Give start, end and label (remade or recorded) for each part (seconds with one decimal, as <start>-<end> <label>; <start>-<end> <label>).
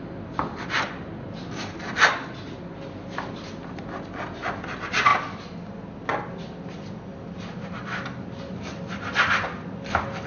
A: 0.0-10.3 recorded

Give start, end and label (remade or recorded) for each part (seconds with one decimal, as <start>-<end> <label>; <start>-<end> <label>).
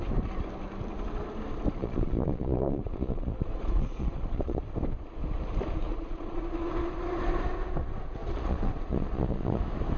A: 0.0-1.8 recorded; 1.8-4.6 remade; 4.6-5.9 recorded; 5.9-6.4 remade; 6.4-8.2 recorded; 8.2-9.6 remade; 9.6-10.0 recorded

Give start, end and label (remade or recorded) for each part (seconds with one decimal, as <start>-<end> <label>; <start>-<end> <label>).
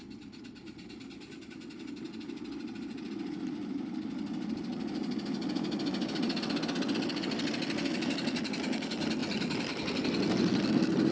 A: 0.0-11.1 recorded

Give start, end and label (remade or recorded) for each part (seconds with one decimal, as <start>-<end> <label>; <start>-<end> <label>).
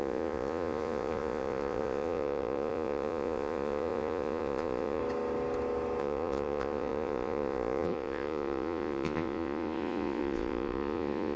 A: 0.0-5.0 remade; 5.0-6.0 recorded; 6.0-11.4 remade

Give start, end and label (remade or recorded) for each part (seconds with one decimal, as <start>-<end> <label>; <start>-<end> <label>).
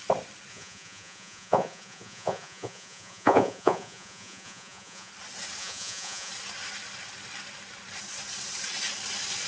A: 0.0-0.5 recorded; 0.5-5.1 remade; 5.1-5.6 recorded; 5.6-6.3 remade; 6.3-9.5 recorded